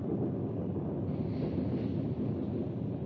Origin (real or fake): real